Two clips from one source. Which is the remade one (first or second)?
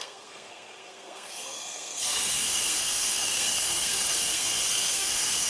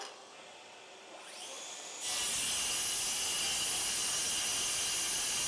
first